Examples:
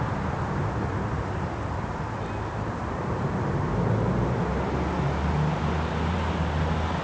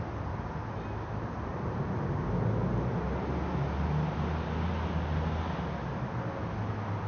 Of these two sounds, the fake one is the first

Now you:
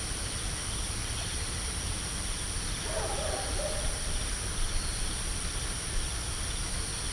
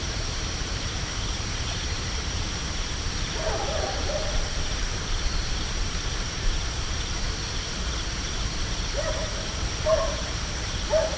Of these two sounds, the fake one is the second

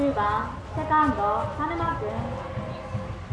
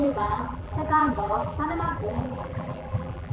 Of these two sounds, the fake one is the second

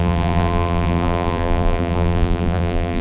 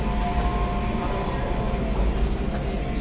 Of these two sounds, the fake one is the first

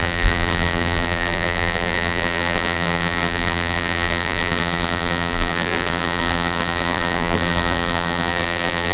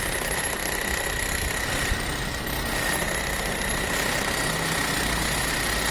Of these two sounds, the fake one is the first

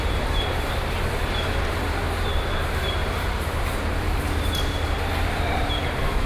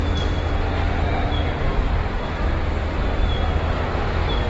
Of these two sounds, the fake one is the first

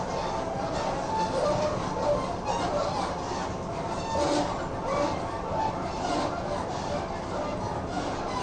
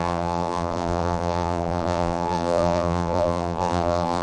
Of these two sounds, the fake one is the second